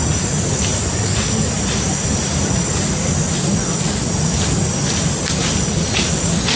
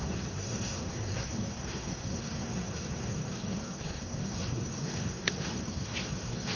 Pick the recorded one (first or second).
first